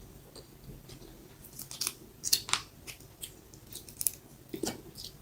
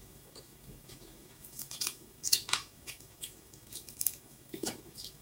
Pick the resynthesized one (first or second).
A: second